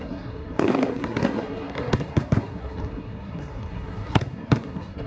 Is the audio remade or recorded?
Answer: remade